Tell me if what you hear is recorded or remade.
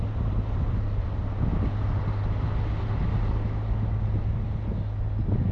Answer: recorded